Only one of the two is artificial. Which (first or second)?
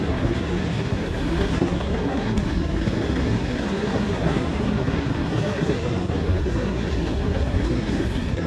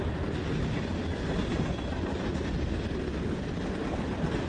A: first